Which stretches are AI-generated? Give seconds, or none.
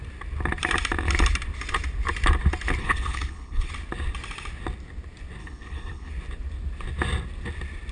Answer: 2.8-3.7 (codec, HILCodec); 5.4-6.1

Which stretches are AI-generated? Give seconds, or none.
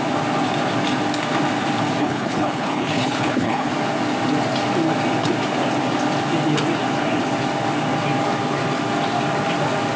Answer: 2.0-3.7 (codec, HILCodec)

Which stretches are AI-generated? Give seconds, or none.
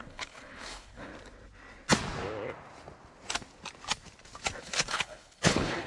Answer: 0.0-1.1 (codec, HILCodec); 4.6-5.9